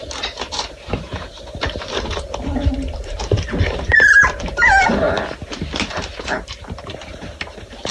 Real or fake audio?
fake